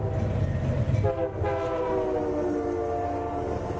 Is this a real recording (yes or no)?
yes